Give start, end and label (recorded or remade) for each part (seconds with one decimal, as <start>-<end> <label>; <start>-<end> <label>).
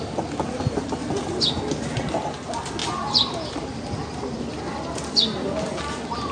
0.0-6.3 recorded